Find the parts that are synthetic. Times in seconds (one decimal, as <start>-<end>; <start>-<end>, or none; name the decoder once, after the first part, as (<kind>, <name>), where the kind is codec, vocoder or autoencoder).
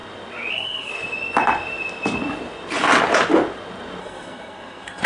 0.5-0.9 (codec, SNAC); 4.0-5.1